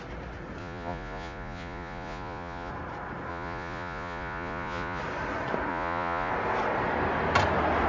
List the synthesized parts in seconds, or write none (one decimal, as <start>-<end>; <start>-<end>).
0.6-2.7; 3.3-5.0; 5.7-6.3